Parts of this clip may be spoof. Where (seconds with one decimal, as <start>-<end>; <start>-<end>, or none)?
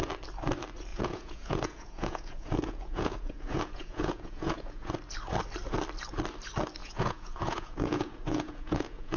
0.9-4.9; 6.8-9.2